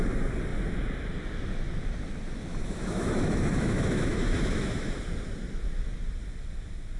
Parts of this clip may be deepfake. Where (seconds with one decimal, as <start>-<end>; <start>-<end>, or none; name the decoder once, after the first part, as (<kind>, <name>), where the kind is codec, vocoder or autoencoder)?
2.5-5.0 (autoencoder, DAC-VAE)